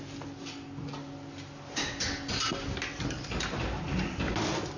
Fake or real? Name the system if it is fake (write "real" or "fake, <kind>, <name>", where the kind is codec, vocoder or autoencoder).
real